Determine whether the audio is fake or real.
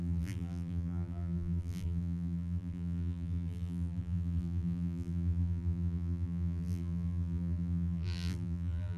fake